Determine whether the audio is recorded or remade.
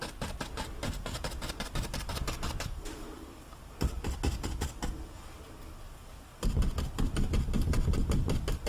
recorded